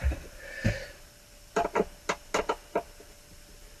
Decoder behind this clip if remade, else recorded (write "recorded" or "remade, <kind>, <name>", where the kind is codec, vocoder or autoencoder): recorded